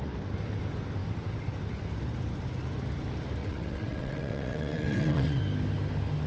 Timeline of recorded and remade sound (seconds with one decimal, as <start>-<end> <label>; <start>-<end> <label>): 0.0-3.4 recorded; 3.4-5.4 remade; 5.4-6.3 recorded